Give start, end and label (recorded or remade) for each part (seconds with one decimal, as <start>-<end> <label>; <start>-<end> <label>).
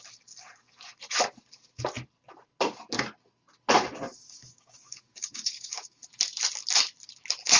0.0-4.1 recorded; 4.1-6.0 remade; 6.0-7.6 recorded